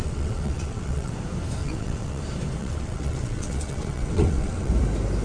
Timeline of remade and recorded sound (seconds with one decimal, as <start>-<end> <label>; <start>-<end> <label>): 0.0-1.1 remade; 1.1-1.6 recorded; 1.6-2.2 remade; 2.2-2.6 recorded; 2.6-4.7 remade; 4.7-5.2 recorded